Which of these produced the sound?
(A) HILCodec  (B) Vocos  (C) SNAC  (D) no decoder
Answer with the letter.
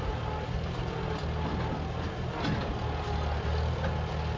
D